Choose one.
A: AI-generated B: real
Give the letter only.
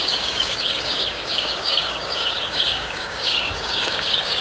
A